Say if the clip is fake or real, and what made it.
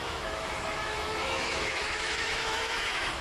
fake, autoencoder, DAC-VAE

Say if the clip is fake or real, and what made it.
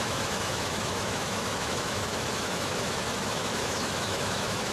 fake, autoencoder, DAC-VAE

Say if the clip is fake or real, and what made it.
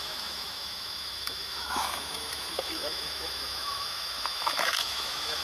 fake, autoencoder, DAC-VAE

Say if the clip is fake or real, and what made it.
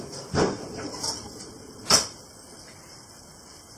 real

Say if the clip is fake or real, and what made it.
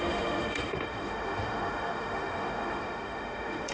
fake, autoencoder, DAC-VAE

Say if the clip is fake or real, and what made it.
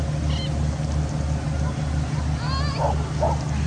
real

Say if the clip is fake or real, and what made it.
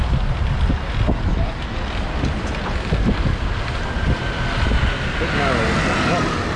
real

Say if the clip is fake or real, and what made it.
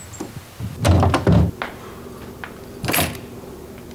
real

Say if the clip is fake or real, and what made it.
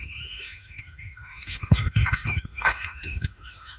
fake, autoencoder, DAC-VAE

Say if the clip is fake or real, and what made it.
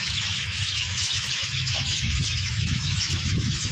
fake, autoencoder, DAC-VAE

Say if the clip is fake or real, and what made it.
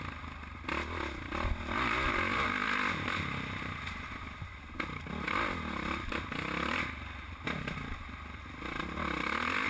real